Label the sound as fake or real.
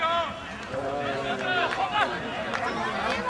real